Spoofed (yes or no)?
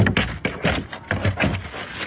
no